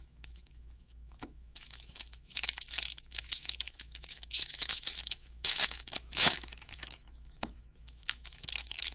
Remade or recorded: remade